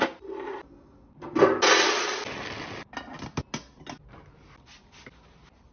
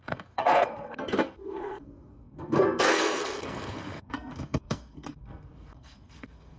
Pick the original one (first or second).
first